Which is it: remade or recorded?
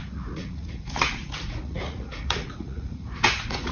remade